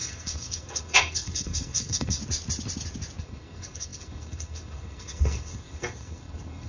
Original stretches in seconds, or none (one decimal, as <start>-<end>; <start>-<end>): 2.2-3.2